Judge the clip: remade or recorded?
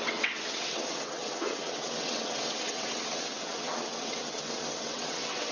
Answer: remade